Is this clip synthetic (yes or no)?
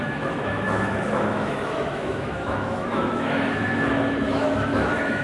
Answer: yes